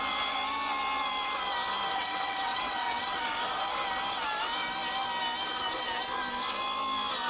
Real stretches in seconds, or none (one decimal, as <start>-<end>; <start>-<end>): 0.0-1.9; 3.2-7.3